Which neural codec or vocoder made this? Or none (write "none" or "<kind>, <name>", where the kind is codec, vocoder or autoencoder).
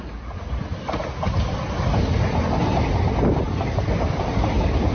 none